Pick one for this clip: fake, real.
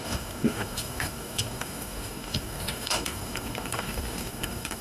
fake